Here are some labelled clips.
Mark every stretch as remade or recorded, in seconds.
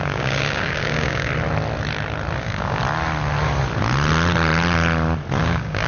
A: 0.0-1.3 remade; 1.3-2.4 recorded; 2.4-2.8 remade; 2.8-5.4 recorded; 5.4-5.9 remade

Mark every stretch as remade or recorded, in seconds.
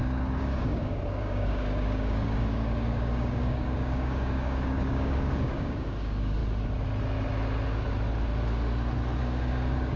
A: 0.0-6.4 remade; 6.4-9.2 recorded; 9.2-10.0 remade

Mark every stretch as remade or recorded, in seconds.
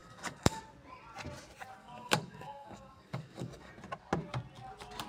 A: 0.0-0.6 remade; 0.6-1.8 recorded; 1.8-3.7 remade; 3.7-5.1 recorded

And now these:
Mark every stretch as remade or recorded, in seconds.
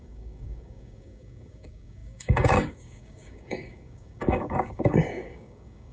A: 0.0-5.9 remade